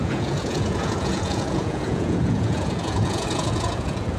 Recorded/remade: remade